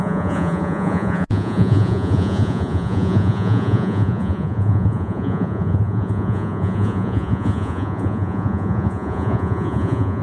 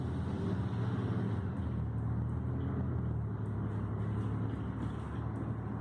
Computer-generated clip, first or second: first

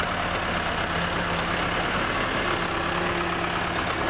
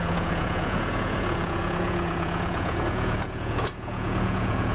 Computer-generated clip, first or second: second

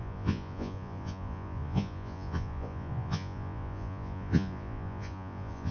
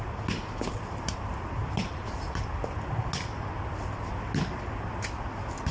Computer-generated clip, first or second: first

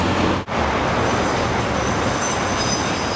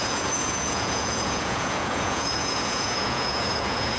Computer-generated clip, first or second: second